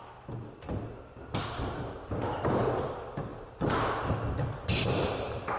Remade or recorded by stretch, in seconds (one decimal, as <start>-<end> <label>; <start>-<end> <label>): 0.0-5.6 recorded